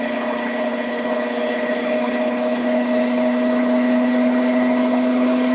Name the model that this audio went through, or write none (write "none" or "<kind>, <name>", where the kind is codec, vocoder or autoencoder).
codec, HILCodec